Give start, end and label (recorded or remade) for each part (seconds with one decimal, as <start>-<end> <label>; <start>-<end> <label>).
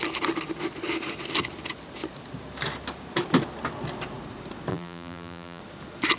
0.0-4.7 recorded; 4.7-5.6 remade; 5.6-6.2 recorded